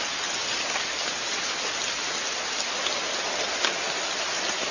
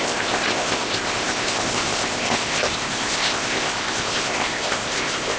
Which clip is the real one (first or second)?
first